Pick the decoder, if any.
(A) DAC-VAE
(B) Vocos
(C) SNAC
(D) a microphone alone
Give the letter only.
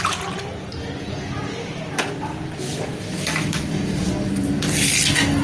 D